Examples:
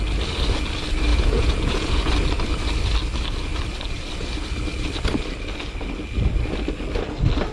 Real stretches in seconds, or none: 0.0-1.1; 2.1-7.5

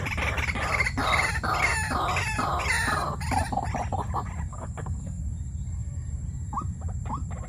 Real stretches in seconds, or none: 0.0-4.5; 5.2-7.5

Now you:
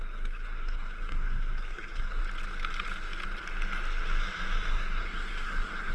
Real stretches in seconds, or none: 2.2-4.7